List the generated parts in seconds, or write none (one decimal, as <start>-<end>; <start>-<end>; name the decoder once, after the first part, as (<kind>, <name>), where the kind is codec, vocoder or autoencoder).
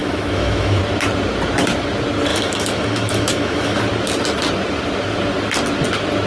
0.0-0.8 (autoencoder, DAC-VAE); 2.3-3.8